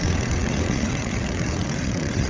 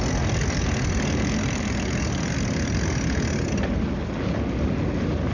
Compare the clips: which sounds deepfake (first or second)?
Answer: first